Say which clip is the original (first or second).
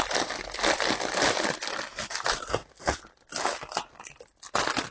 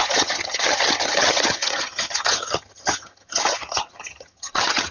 first